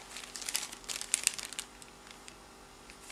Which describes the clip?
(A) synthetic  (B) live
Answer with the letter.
B